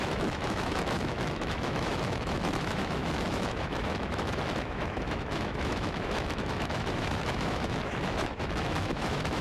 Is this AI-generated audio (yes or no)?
yes